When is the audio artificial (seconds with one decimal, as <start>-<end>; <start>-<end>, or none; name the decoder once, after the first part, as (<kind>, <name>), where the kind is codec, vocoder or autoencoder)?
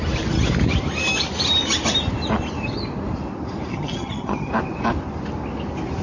3.7-4.5 (vocoder, HiFi-GAN)